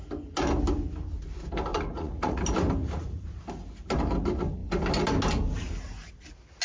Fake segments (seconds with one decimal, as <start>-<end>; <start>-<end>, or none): 1.7-2.4; 2.8-3.4